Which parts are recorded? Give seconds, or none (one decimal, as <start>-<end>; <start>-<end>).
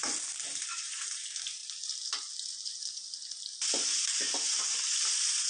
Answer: 0.0-5.5